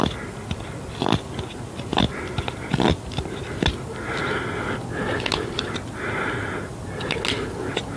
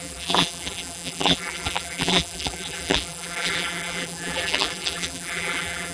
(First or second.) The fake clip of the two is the second